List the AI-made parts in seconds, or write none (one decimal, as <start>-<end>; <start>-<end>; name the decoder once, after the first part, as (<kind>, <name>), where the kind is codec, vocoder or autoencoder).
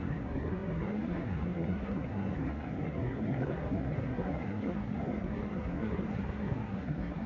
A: 0.0-7.3 (codec, SNAC)